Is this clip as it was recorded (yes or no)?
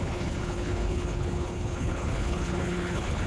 no